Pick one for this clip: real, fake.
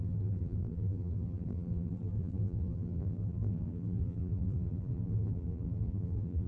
fake